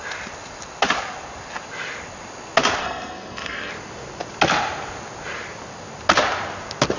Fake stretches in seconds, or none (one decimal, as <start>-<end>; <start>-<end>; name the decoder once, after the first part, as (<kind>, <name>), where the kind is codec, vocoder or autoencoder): 2.8-3.7 (codec, SNAC)